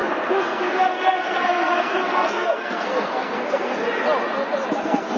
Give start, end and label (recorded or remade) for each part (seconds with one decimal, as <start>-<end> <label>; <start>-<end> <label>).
0.0-3.8 remade; 3.8-4.8 recorded; 4.8-5.2 remade